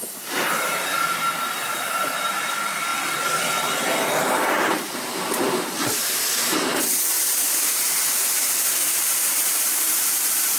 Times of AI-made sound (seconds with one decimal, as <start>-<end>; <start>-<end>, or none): 0.0-2.9; 4.2-10.6